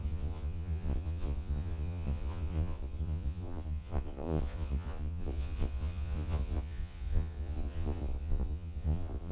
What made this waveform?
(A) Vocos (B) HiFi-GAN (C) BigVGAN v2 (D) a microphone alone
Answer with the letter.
A